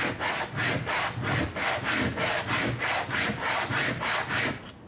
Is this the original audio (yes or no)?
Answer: yes